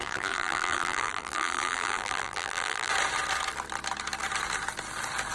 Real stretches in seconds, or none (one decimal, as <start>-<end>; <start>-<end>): 2.9-5.3